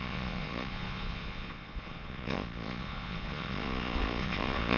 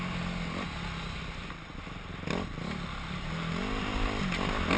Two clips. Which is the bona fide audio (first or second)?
second